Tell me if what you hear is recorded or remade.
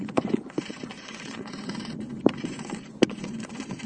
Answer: remade